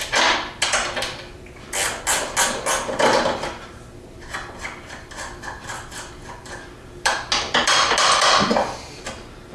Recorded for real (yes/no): yes